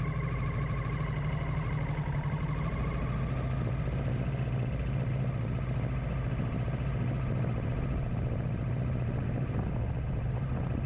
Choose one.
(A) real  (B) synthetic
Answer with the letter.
A